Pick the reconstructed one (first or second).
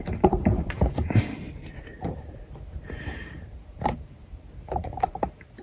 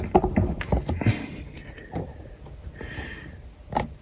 first